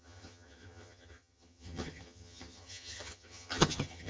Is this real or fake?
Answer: fake